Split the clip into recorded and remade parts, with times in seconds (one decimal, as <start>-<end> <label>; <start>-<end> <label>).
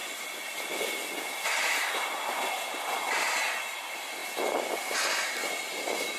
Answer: 0.0-6.2 recorded